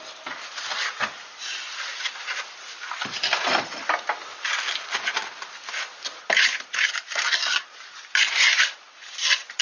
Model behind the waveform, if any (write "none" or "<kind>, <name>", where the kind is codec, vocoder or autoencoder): none